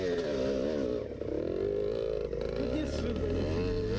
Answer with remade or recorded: recorded